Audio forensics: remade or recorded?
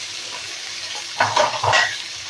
remade